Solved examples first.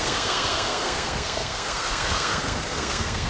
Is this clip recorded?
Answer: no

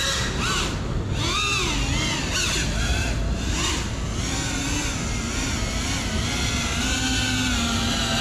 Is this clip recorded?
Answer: yes